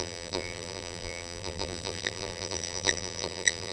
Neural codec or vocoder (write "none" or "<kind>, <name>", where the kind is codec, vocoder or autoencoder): vocoder, BigVGAN v2